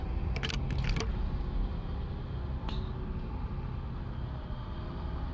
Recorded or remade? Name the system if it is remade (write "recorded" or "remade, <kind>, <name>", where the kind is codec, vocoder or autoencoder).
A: recorded